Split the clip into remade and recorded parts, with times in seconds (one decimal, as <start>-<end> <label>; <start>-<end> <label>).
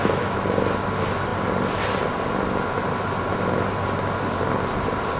0.0-5.2 recorded